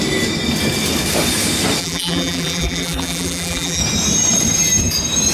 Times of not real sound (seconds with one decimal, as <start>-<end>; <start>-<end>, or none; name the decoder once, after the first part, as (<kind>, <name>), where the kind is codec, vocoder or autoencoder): 1.8-3.8 (vocoder, BigVGAN v2)